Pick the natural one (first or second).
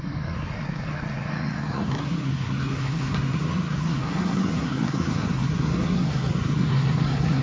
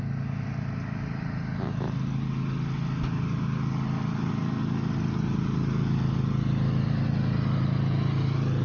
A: second